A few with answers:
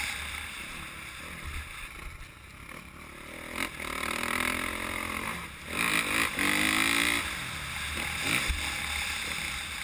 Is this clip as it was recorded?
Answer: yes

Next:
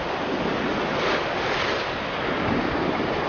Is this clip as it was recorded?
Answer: yes